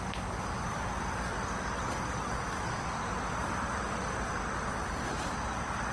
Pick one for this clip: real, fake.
real